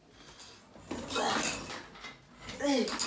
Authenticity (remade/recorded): recorded